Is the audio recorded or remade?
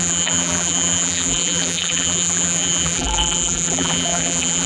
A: remade